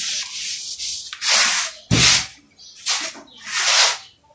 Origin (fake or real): real